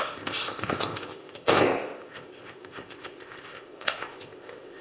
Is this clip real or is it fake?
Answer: fake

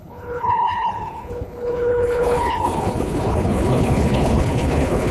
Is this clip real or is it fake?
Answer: fake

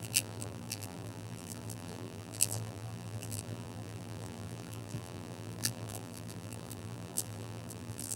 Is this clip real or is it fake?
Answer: fake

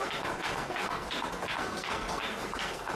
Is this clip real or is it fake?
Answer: fake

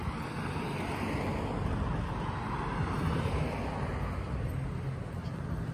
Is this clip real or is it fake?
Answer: real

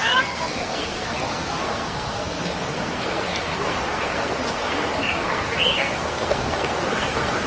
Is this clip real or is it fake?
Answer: fake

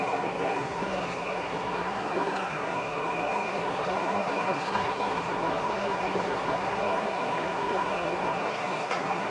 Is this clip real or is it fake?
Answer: fake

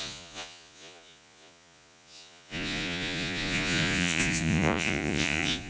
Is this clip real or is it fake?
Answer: fake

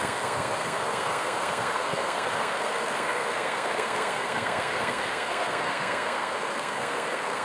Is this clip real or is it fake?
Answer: fake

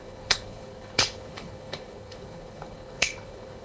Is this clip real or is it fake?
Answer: fake